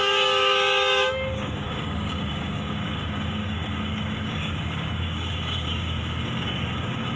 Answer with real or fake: fake